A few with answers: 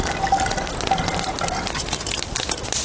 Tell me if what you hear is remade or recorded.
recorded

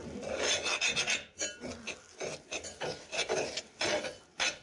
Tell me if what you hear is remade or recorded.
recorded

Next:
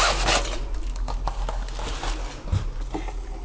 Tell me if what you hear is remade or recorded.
recorded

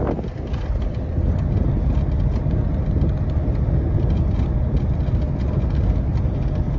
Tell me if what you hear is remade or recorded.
recorded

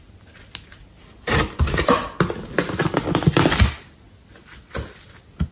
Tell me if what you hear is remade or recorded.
recorded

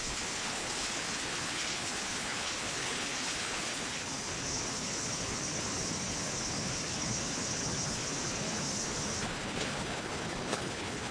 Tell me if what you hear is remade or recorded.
remade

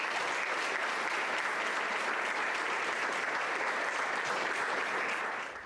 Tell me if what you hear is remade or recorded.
recorded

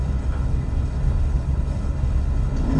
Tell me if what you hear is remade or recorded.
remade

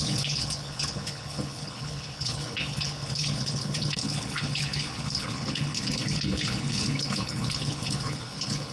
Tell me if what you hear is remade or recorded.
remade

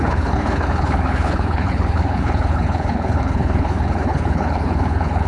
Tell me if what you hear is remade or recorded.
remade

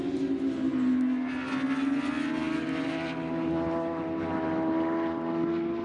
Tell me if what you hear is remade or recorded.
recorded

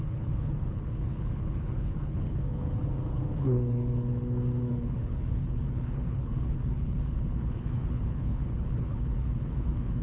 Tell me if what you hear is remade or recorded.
remade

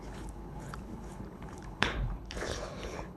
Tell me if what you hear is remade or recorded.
remade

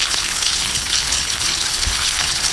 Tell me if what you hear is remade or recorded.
remade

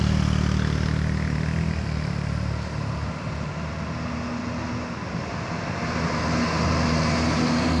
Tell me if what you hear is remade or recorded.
recorded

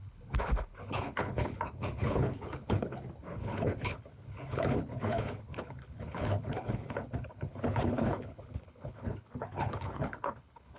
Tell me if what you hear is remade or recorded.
remade